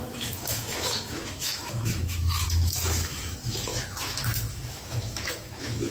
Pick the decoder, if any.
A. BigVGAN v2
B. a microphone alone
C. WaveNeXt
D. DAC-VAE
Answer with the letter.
D